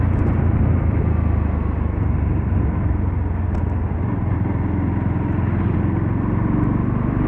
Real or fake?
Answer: real